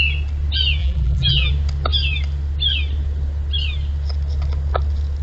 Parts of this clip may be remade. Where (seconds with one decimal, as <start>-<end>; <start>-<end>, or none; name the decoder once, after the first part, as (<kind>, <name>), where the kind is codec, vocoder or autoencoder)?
0.8-1.5 (vocoder, BigVGAN v2)